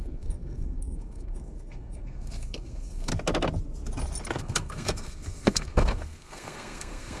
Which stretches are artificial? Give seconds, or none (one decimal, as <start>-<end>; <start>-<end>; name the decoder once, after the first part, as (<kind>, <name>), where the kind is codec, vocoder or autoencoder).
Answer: 0.0-3.1 (codec, SNAC); 4.4-7.2